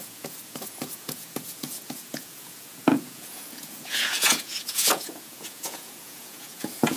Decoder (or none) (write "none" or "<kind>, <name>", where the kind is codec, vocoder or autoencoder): vocoder, Vocos